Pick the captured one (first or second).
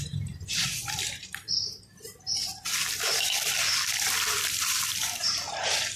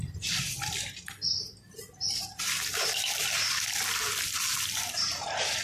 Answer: second